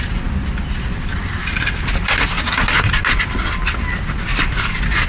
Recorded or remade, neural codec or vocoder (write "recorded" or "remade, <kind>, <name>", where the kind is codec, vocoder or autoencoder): recorded